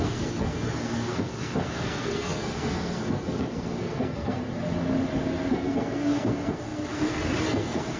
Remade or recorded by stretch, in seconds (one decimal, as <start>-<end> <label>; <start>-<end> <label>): 0.0-4.4 remade; 4.4-5.5 recorded; 5.5-8.0 remade

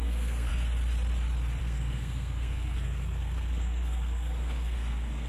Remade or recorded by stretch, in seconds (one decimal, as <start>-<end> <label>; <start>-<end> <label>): 0.0-0.5 remade; 0.5-1.6 recorded; 1.6-5.3 remade

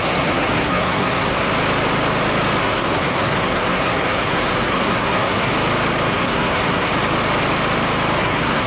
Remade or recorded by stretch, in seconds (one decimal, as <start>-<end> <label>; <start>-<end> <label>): 0.0-1.5 remade; 1.5-2.6 recorded; 2.6-5.5 remade; 5.5-6.1 recorded; 6.1-6.9 remade; 6.9-8.2 recorded; 8.2-8.7 remade

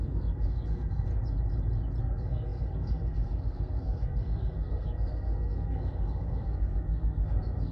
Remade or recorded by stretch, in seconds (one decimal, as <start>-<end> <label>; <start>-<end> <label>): 0.0-1.1 remade; 1.1-2.0 recorded; 2.0-7.7 remade

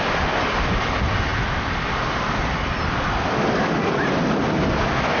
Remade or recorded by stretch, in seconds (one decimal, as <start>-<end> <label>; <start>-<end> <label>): 0.0-5.2 recorded

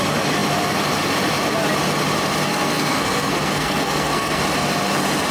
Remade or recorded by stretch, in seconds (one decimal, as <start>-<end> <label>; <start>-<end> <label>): 0.0-2.5 recorded; 2.5-4.4 remade; 4.4-5.3 recorded

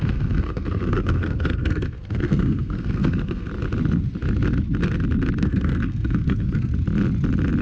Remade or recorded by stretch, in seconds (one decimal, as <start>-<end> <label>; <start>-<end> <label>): 0.0-3.5 remade; 3.5-5.4 recorded; 5.4-6.7 remade; 6.7-7.6 recorded

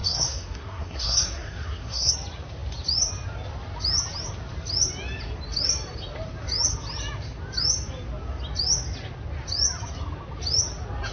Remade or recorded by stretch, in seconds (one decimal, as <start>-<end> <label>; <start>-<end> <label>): 0.0-2.1 remade; 2.1-11.1 recorded